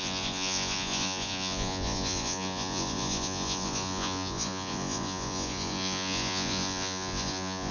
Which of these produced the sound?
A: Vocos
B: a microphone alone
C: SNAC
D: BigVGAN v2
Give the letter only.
A